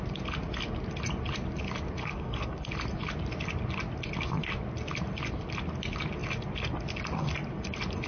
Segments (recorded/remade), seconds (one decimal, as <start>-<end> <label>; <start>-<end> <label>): 0.0-2.0 recorded; 2.0-2.7 remade; 2.7-8.1 recorded

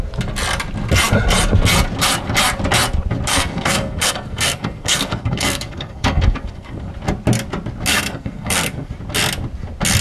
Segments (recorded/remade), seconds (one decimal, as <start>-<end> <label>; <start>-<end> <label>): 0.0-3.3 recorded; 3.3-6.9 remade; 6.9-7.9 recorded; 7.9-8.9 remade; 8.9-10.0 recorded

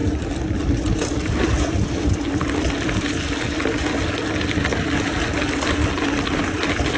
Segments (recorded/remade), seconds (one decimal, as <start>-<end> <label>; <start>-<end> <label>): 0.0-7.0 recorded